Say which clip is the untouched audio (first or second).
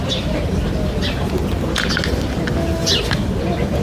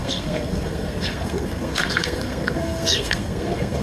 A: first